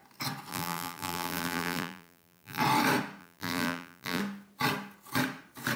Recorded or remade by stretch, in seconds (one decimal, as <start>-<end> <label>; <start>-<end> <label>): 0.0-0.5 recorded; 0.5-2.6 remade; 2.6-3.2 recorded; 3.2-4.2 remade; 4.2-5.8 recorded